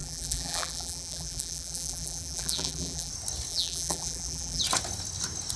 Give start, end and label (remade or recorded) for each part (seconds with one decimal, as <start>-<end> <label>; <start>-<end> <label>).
0.0-3.1 remade; 3.1-3.5 recorded; 3.5-4.6 remade; 4.6-5.6 recorded

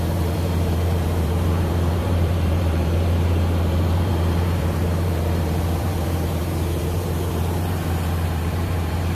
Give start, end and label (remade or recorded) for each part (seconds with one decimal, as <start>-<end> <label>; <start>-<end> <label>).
0.0-9.1 remade

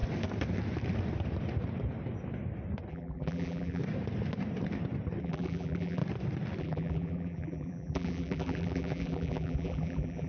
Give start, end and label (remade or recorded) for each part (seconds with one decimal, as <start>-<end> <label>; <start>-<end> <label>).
0.0-2.9 recorded; 2.9-3.8 remade; 3.8-5.2 recorded; 5.2-6.0 remade; 6.0-6.6 recorded; 6.6-10.3 remade

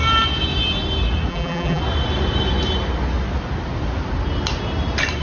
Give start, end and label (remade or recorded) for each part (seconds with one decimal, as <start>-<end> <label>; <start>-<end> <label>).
0.0-1.3 recorded; 1.3-1.8 remade; 1.8-5.2 recorded

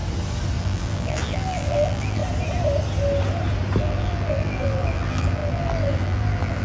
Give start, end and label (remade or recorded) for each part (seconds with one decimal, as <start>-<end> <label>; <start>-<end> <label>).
0.0-0.6 recorded; 0.6-2.2 remade; 2.2-3.8 recorded; 3.8-6.6 remade

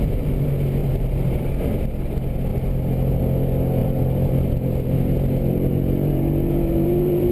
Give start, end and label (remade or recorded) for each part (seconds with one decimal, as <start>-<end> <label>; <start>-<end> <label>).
0.0-0.8 recorded; 0.8-1.6 remade; 1.6-3.8 recorded; 3.8-7.3 remade

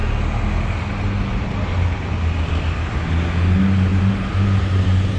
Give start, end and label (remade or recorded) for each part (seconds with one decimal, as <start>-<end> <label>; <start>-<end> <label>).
0.0-3.9 recorded; 3.9-5.2 remade

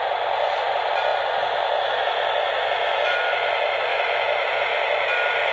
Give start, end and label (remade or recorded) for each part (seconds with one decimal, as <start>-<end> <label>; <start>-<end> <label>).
0.0-1.1 remade; 1.1-3.2 recorded; 3.2-3.9 remade; 3.9-4.5 recorded; 4.5-5.5 remade